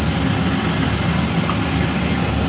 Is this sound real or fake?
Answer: real